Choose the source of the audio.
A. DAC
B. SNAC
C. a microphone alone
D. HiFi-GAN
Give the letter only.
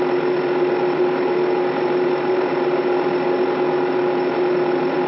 C